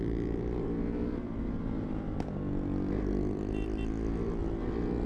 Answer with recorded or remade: recorded